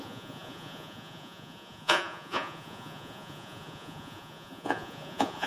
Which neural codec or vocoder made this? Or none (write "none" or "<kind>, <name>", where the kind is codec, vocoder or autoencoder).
vocoder, Vocos